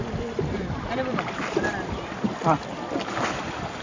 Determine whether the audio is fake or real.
fake